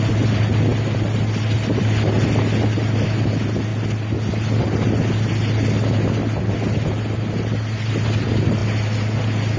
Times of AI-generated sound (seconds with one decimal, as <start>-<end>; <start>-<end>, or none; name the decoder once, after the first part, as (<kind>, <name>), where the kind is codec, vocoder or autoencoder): none